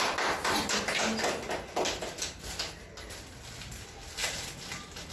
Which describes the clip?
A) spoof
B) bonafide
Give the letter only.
B